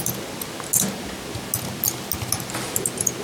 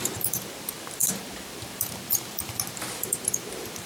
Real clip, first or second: first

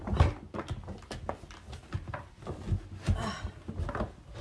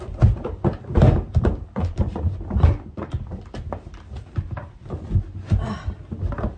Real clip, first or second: first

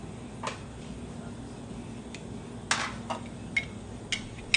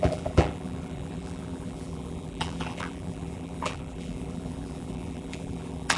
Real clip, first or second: first